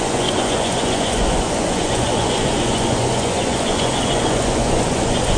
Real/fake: fake